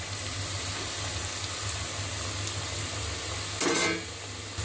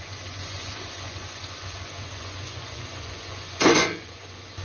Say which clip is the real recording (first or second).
first